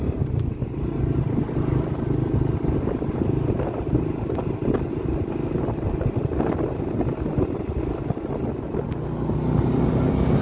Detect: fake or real real